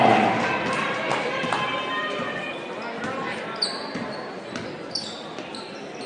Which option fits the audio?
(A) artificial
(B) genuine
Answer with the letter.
B